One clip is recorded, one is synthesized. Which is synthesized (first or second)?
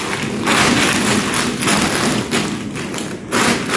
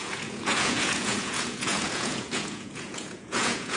second